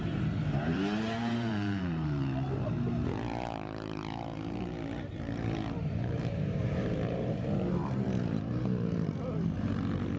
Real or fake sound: fake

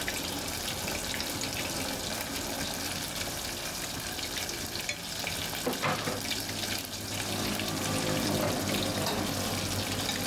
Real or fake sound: real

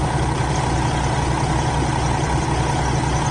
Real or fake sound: real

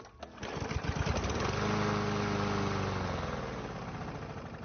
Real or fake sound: real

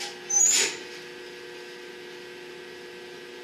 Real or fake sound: real